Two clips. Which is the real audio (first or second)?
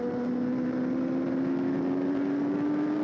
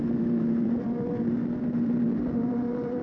first